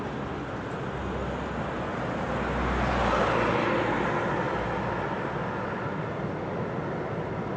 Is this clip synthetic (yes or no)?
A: no